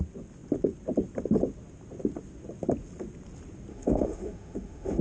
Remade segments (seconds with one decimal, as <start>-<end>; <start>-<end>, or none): 3.7-5.0